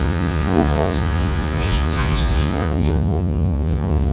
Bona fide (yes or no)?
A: no